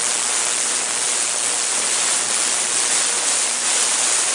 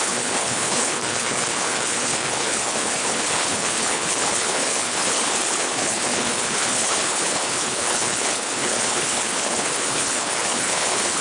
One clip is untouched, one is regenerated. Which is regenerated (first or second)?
second